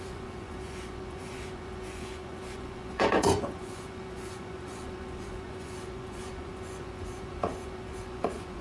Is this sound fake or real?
fake